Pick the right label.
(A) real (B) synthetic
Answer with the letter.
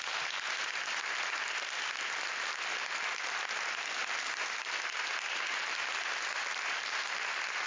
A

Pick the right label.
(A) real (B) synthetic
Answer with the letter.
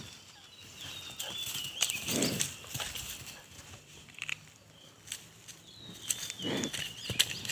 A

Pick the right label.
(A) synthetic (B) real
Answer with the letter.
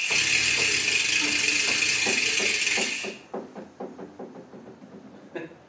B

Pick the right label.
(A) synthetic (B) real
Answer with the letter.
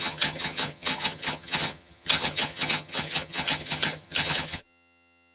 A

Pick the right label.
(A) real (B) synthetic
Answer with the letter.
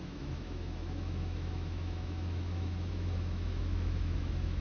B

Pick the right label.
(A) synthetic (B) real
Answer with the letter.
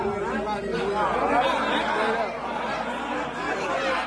B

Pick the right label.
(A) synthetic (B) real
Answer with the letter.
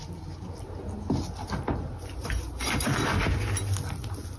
B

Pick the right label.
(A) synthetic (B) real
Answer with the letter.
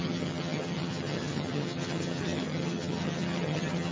A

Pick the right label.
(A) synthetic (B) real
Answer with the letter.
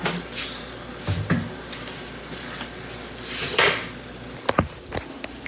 B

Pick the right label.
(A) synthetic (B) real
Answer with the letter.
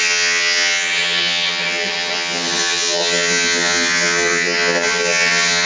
A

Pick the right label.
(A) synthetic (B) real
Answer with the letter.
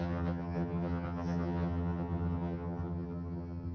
A